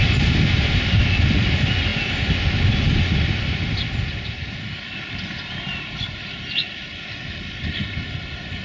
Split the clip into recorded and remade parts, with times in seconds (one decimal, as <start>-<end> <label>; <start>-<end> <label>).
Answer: 0.0-8.6 recorded